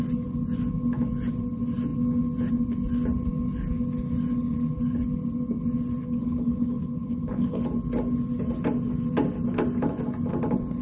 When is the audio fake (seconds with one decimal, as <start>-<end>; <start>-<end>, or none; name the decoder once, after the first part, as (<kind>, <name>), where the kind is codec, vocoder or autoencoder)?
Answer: 6.0-7.6 (codec, HILCodec)